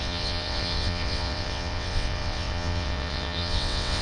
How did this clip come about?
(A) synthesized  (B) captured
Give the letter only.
A